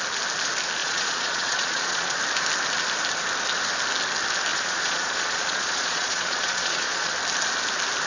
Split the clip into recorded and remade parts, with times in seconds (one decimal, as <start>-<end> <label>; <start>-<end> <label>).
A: 0.0-0.8 recorded; 0.8-2.2 remade; 2.2-4.5 recorded; 4.5-7.1 remade; 7.1-8.1 recorded